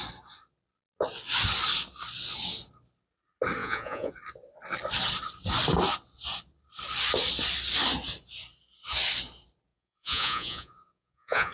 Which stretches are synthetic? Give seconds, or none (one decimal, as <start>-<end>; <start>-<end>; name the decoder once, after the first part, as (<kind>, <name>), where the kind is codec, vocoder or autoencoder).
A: 3.6-4.1 (vocoder, Vocos); 9.7-11.5